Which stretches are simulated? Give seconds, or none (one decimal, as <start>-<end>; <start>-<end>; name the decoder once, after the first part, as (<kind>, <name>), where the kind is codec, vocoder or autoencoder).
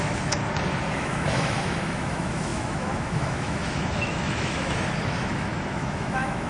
0.0-0.4 (autoencoder, DAC-VAE); 0.9-6.5